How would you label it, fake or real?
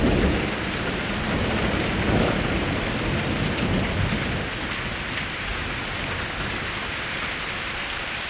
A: real